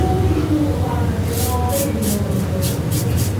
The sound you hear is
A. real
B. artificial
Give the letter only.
A